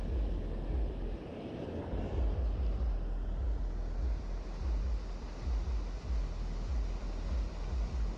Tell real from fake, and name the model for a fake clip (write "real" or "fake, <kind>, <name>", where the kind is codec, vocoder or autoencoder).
real